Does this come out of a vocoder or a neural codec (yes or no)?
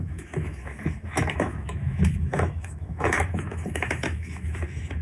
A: yes